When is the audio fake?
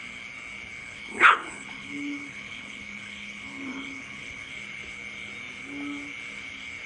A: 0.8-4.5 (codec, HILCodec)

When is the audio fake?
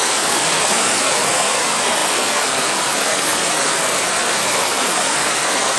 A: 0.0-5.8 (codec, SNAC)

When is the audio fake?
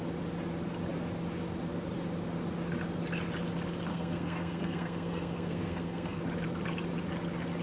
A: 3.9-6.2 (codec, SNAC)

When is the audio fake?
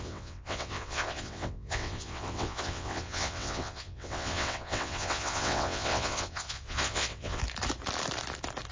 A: 0.0-7.4 (vocoder, WaveNeXt)